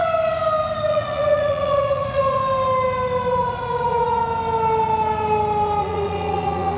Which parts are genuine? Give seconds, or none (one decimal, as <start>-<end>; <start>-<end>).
0.0-0.9; 2.4-3.3; 4.2-5.8